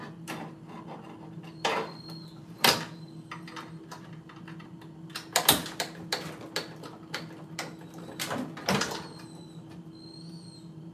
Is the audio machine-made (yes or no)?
no